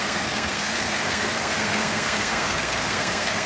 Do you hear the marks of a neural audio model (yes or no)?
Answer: yes